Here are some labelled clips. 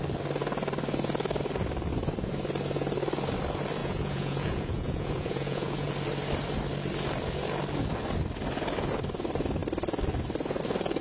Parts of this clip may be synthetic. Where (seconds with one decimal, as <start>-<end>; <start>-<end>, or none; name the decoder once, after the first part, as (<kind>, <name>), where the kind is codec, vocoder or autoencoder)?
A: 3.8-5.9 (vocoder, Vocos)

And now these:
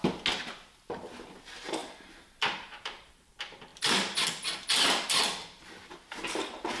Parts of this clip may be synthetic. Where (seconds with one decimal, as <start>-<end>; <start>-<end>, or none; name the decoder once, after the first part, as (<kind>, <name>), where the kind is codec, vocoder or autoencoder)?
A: 1.8-3.3 (vocoder, BigVGAN v2)

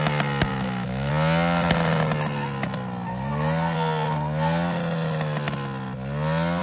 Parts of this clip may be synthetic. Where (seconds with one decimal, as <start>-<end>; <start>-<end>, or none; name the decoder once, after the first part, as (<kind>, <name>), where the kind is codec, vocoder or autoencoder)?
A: 0.5-1.1 (autoencoder, DAC-VAE)

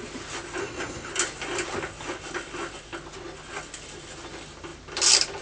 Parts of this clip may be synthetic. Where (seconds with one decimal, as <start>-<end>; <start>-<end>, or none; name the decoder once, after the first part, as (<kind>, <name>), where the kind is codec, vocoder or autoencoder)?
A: 0.6-1.1 (codec, SNAC)

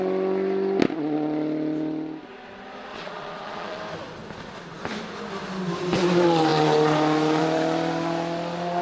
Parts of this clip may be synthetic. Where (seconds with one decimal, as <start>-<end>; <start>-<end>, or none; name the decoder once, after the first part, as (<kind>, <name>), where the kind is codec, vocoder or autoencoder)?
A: 2.9-3.8 (vocoder, Vocos)

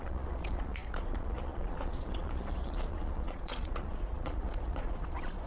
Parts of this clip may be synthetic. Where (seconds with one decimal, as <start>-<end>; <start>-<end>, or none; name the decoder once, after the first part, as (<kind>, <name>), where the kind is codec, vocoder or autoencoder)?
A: 0.0-5.5 (vocoder, Vocos)

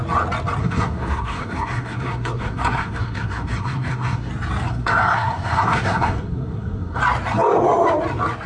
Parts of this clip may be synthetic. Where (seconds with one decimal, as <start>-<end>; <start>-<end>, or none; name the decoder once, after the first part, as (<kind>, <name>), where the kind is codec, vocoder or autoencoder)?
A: 0.6-4.3 (codec, SNAC); 4.7-7.0